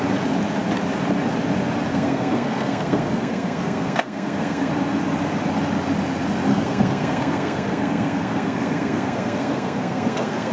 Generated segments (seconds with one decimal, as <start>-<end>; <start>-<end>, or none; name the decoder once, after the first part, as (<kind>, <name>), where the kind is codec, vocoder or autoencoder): 1.9-4.7 (codec, SNAC); 6.5-10.5